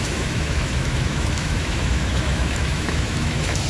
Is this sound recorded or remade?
remade